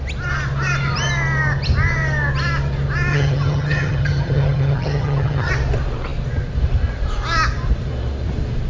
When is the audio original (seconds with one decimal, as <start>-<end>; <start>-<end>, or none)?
0.0-3.1; 5.5-8.7